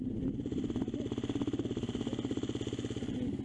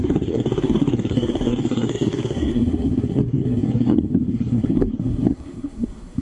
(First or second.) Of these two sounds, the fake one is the second